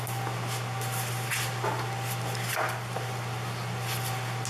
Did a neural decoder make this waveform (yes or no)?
no